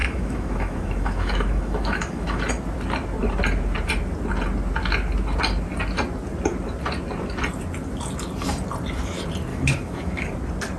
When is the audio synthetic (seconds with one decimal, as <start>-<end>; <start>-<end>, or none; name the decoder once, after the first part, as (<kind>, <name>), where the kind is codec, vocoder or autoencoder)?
0.0-2.4 (autoencoder, DAC-VAE); 9.5-10.3